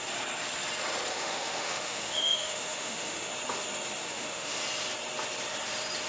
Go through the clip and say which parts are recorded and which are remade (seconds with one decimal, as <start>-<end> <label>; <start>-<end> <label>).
0.0-1.1 recorded; 1.1-3.3 remade; 3.3-4.0 recorded; 4.0-4.6 remade; 4.6-6.1 recorded